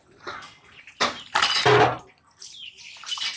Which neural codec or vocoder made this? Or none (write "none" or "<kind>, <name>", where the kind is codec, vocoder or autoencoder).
none